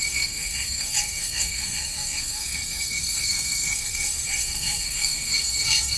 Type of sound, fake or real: fake